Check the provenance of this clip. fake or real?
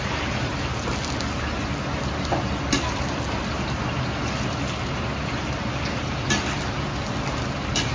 real